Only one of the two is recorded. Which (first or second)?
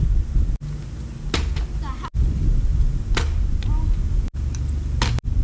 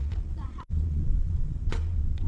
first